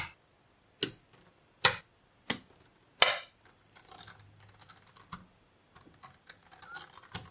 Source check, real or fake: real